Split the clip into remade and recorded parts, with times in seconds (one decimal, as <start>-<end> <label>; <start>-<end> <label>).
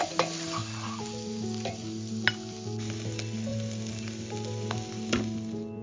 0.0-5.8 recorded